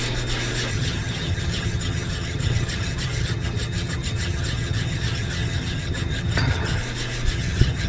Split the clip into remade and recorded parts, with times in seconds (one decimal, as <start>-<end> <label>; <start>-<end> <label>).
0.0-0.7 recorded; 0.7-6.8 remade; 6.8-7.3 recorded; 7.3-7.9 remade